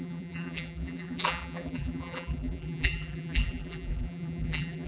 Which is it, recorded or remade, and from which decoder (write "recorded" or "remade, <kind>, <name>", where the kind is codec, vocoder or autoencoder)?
remade, vocoder, BigVGAN v2